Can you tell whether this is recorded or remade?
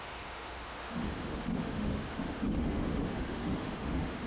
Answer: remade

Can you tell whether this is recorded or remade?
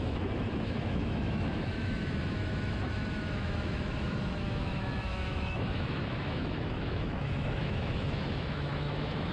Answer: remade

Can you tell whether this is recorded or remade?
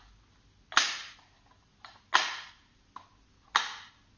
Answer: recorded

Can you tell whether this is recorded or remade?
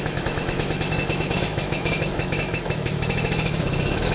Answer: remade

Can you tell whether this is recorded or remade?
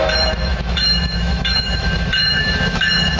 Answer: remade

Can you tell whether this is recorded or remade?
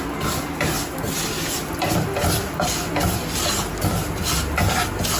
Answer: recorded